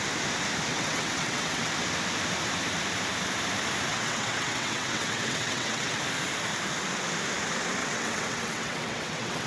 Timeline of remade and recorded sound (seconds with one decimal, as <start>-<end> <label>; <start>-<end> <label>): 0.0-0.7 recorded; 0.7-1.7 remade; 1.7-3.9 recorded; 3.9-6.0 remade; 6.0-7.8 recorded; 7.8-9.5 remade

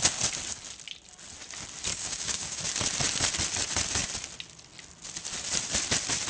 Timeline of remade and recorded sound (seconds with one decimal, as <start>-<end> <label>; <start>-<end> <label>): 0.0-1.9 recorded; 1.9-2.6 remade; 2.6-6.3 recorded